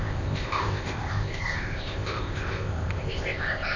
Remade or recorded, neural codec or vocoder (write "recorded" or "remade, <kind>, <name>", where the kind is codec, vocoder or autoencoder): remade, codec, ZipCodec